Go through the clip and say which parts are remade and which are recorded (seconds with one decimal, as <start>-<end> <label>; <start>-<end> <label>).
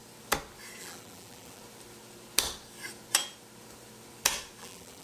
0.0-0.8 recorded; 0.8-1.6 remade; 1.6-4.6 recorded; 4.6-5.0 remade